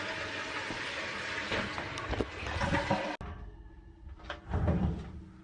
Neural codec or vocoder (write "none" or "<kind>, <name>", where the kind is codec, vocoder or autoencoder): none